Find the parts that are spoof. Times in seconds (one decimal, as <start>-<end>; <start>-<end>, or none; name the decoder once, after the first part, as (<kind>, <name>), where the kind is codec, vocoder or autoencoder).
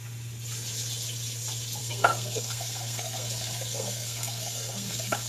1.8-5.3 (codec, SNAC)